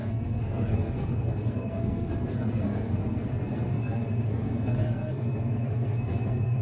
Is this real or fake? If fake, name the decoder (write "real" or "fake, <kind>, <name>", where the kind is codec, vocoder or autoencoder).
fake, codec, SNAC